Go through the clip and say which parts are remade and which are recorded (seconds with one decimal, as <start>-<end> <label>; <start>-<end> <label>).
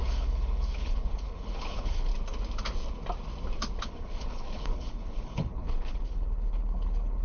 0.0-2.1 remade; 2.1-3.8 recorded; 3.8-7.2 remade